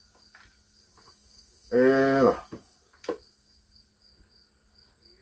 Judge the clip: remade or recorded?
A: remade